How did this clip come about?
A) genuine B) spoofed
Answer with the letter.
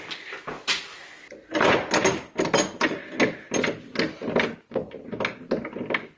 A